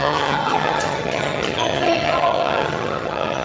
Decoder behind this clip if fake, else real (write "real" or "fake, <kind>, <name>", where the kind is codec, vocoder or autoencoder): fake, vocoder, HiFi-GAN